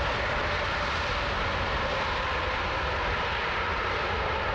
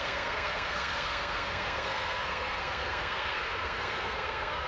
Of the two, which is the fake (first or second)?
second